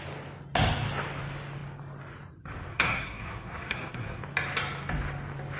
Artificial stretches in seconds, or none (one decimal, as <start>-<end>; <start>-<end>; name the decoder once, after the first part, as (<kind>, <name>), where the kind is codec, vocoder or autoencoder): 2.7-4.2 (codec, SNAC)